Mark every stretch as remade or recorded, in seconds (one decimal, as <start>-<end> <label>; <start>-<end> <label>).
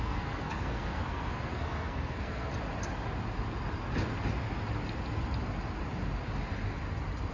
0.0-2.5 remade; 2.5-7.3 recorded